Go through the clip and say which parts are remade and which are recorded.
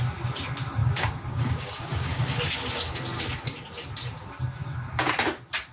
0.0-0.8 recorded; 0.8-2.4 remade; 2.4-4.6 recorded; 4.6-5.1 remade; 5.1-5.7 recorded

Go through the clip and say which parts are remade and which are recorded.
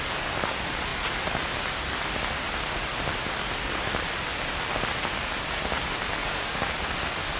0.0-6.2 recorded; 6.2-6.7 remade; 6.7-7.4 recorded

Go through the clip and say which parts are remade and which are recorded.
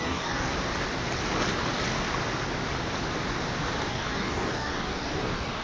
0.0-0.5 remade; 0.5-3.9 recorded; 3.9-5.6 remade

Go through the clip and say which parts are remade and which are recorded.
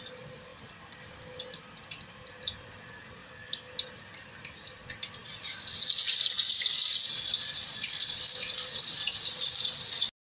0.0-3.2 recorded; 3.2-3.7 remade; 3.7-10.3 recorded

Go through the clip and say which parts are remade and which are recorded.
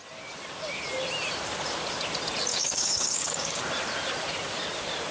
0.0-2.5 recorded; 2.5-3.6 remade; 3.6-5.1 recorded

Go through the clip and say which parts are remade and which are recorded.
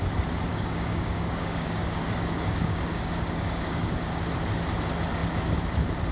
0.0-0.5 recorded; 0.5-4.2 remade; 4.2-6.1 recorded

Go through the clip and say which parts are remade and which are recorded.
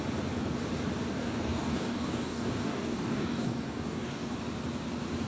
0.0-1.2 recorded; 1.2-4.4 remade; 4.4-5.3 recorded